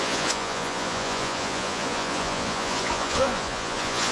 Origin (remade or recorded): remade